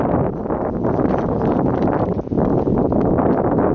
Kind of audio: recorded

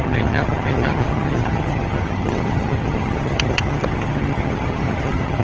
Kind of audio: remade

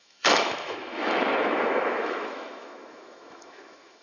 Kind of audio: remade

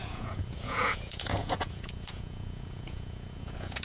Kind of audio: remade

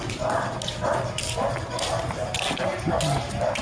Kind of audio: recorded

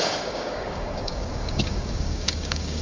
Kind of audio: remade